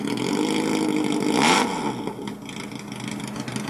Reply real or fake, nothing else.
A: real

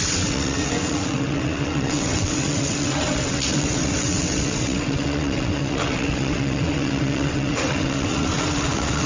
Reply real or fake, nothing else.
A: fake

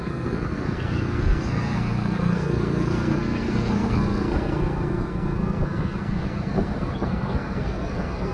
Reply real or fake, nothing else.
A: fake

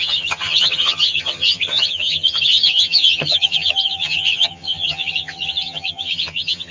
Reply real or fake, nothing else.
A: fake